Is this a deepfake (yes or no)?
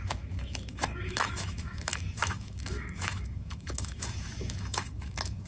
yes